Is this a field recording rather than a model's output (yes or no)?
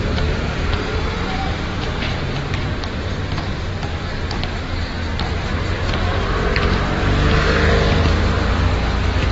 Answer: yes